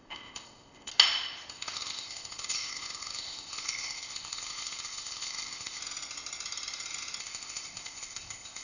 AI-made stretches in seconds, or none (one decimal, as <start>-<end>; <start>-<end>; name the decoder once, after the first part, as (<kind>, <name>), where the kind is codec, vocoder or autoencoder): 0.0-0.9 (codec, ZipCodec); 1.5-5.8; 7.2-8.6